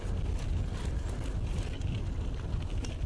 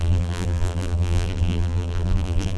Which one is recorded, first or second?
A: first